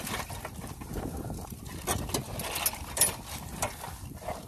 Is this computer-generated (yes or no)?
no